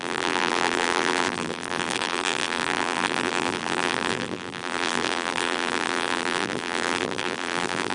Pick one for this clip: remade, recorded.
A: remade